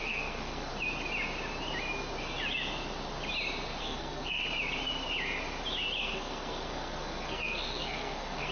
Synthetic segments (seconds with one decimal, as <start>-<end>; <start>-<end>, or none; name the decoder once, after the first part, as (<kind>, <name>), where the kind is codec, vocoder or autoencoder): 0.0-0.7 (codec, SNAC); 3.8-4.4; 6.0-8.5